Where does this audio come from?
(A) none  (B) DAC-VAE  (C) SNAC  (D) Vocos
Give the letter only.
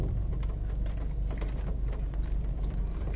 A